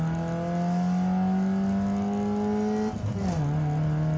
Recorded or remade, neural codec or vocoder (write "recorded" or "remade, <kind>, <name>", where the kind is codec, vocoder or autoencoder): recorded